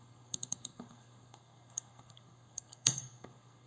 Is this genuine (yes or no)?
no